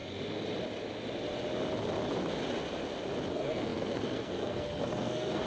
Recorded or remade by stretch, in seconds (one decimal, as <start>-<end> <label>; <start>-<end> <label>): 0.0-3.3 recorded; 3.3-5.5 remade